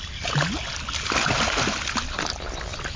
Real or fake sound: real